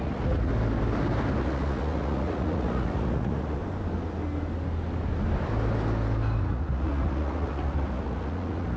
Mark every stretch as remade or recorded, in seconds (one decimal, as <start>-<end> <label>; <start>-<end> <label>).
0.0-0.5 remade; 0.5-1.4 recorded; 1.4-3.6 remade; 3.6-6.4 recorded; 6.4-8.8 remade